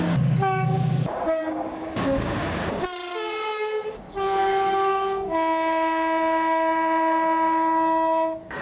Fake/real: fake